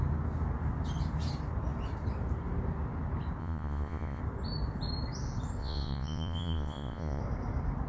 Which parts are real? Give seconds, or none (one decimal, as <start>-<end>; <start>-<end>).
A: 0.0-3.4; 4.2-5.6; 7.2-7.9